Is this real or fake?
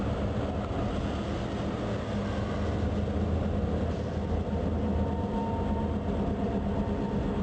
real